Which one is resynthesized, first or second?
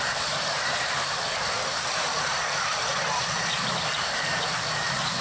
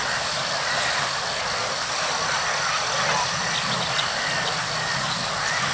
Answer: first